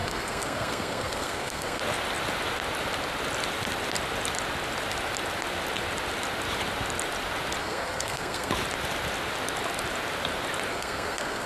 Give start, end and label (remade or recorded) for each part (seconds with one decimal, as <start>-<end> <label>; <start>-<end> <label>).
0.0-1.8 remade; 1.8-7.6 recorded; 7.6-8.5 remade; 8.5-10.7 recorded; 10.7-11.5 remade